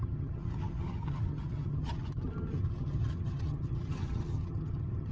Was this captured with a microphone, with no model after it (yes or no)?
no